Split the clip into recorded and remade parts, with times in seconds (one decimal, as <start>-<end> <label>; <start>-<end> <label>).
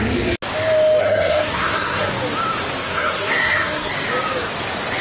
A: 0.0-1.0 recorded; 1.0-2.1 remade; 2.1-2.8 recorded; 2.8-3.9 remade; 3.9-5.0 recorded